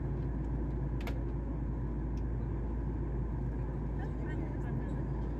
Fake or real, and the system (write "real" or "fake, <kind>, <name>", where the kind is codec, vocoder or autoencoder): real